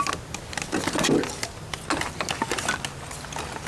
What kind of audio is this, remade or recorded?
recorded